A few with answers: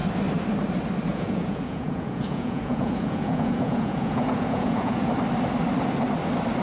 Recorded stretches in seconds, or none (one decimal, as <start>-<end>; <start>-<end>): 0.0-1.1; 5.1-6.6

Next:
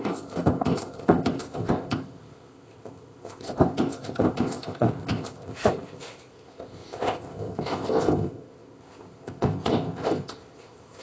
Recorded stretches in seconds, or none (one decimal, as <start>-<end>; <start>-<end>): none

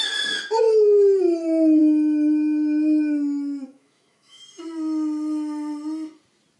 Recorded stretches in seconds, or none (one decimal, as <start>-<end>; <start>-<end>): 0.0-1.8; 4.4-6.6

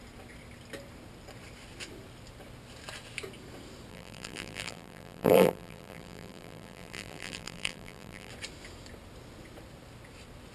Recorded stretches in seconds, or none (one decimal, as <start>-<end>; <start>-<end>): 0.0-3.9; 8.3-10.5

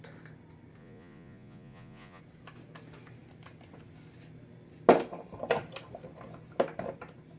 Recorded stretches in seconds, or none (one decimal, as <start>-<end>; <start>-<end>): 0.0-0.8; 2.2-7.4

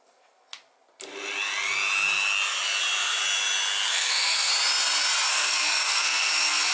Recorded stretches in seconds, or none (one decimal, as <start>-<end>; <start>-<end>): 0.5-3.9; 4.5-5.3